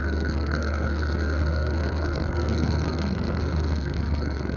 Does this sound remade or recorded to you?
remade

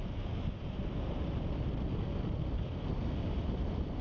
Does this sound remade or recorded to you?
recorded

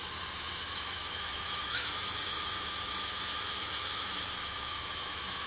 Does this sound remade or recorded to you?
remade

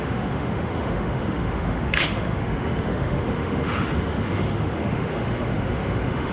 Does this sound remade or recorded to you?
remade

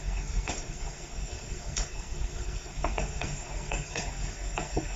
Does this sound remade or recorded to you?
remade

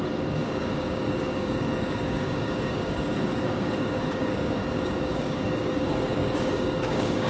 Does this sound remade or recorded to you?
remade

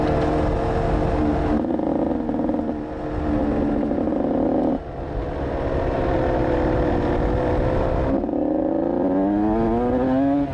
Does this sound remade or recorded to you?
recorded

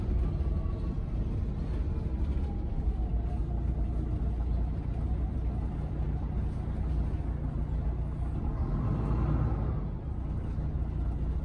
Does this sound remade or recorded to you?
recorded